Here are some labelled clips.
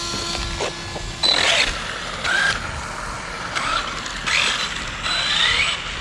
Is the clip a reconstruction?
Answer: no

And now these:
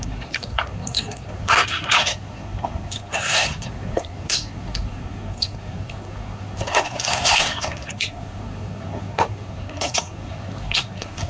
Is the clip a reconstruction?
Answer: yes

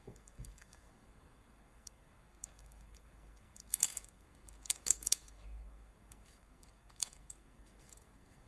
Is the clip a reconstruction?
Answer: yes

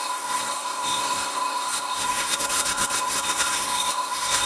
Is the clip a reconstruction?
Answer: yes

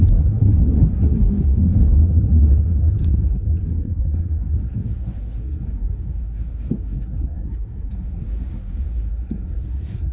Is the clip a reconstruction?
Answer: yes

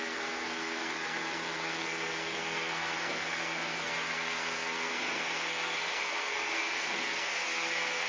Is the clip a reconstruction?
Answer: yes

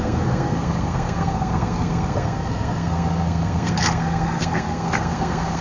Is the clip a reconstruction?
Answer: yes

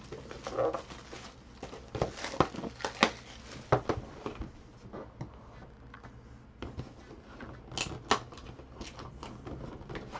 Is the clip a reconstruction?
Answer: no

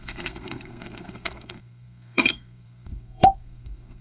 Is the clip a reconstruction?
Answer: yes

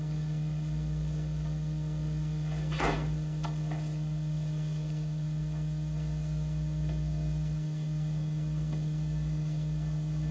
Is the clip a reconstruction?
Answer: yes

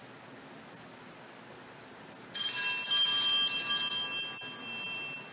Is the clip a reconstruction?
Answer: no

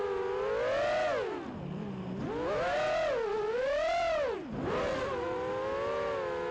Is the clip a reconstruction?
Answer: no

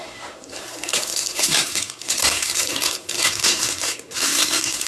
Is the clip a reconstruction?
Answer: yes